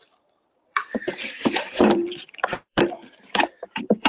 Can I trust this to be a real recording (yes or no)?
no